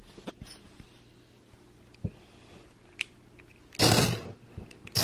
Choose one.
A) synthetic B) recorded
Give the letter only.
B